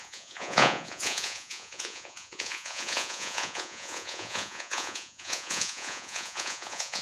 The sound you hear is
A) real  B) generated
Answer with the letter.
B